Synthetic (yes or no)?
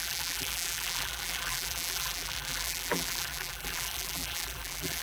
yes